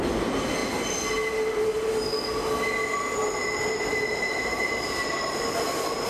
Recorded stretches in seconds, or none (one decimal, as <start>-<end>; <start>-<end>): 0.0-3.9; 5.1-6.1